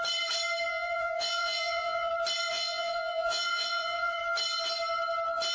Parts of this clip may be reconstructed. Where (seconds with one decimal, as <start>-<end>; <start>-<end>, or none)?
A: 0.7-2.1; 2.5-4.2